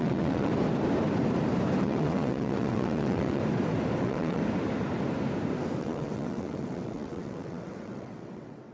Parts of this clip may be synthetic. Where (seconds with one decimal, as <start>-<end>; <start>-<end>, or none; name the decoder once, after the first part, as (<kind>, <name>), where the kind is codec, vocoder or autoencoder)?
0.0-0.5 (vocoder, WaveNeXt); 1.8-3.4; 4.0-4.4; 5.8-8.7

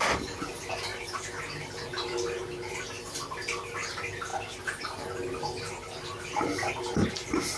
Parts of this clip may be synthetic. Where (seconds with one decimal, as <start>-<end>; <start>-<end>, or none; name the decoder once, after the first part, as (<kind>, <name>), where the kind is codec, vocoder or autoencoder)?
none

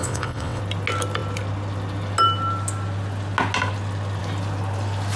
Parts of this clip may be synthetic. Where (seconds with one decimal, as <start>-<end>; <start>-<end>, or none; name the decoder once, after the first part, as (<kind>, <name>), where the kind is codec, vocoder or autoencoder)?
0.0-0.6 (vocoder, WaveNeXt)